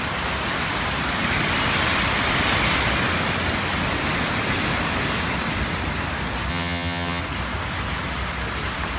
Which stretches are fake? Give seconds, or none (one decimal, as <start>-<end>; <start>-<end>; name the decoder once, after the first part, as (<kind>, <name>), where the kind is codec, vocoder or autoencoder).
6.5-7.2 (vocoder, HiFi-GAN)